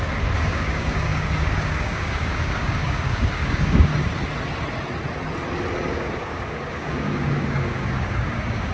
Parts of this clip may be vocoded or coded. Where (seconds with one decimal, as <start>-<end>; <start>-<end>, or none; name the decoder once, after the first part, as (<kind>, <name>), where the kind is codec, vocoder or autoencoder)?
0.0-3.9 (codec, DAC); 5.9-8.7